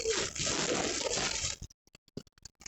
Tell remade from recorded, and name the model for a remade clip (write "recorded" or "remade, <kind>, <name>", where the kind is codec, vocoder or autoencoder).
recorded